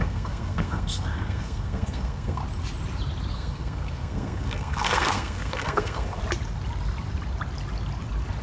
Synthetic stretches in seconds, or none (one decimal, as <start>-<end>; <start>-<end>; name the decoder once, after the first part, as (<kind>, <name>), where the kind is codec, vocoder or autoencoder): 0.0-2.4 (codec, SNAC); 3.3-6.2